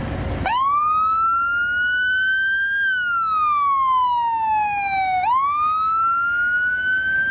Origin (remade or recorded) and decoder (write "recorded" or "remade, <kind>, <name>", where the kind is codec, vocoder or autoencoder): recorded